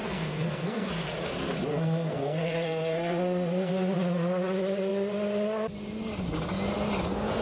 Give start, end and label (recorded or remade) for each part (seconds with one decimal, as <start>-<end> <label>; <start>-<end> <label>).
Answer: 0.0-0.9 remade; 0.9-1.7 recorded; 1.7-3.7 remade; 3.7-7.4 recorded